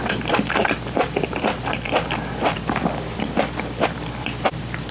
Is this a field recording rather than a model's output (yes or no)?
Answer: no